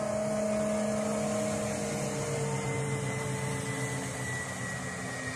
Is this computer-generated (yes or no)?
no